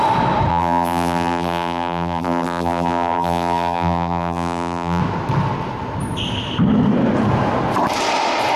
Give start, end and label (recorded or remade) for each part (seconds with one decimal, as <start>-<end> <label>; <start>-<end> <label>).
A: 0.0-0.5 recorded; 0.5-5.0 remade; 5.0-8.6 recorded